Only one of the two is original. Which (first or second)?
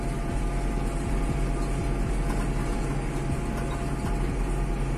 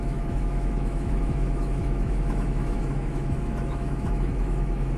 first